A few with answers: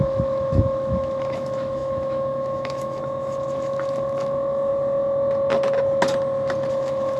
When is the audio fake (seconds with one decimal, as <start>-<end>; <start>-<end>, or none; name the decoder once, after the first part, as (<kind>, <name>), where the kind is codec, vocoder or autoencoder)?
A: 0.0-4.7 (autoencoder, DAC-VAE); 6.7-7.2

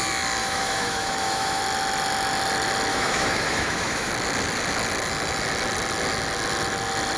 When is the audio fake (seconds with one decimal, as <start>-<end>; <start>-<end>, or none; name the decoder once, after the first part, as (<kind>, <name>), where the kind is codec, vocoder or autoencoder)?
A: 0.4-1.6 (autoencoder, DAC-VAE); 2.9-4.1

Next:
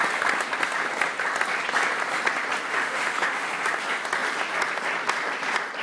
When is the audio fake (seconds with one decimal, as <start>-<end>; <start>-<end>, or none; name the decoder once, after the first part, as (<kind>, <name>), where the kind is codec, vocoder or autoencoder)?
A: 2.7-3.5 (autoencoder, DAC-VAE)

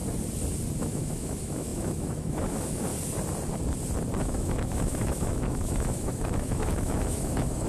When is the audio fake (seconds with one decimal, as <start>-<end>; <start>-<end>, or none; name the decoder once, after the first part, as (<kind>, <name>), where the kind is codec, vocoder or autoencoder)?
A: 0.8-2.9 (autoencoder, DAC-VAE); 4.2-7.7

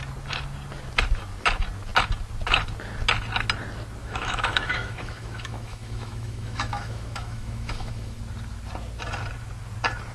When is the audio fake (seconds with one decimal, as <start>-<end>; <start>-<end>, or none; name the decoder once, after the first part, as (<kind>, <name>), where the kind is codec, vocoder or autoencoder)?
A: 4.0-8.2 (autoencoder, DAC-VAE)

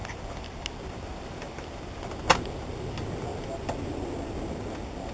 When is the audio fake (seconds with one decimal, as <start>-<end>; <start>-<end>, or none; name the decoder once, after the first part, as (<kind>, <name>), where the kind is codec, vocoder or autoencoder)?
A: none

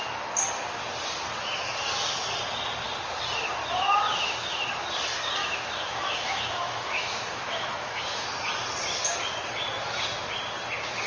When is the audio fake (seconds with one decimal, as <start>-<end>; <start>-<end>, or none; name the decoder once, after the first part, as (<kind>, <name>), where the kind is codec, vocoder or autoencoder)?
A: 3.7-4.9 (autoencoder, DAC-VAE); 5.4-8.0

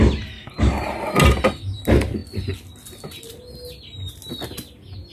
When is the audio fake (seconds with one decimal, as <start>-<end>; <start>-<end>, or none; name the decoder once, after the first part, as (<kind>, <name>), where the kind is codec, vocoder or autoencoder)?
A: none